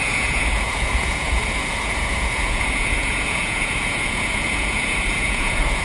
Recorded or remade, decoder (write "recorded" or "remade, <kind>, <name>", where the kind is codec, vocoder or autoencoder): remade, vocoder, Vocos